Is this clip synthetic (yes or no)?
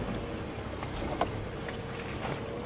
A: no